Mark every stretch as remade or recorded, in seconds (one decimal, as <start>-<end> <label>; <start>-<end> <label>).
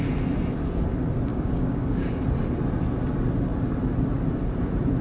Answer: 0.0-1.3 recorded; 1.3-2.2 remade; 2.2-5.0 recorded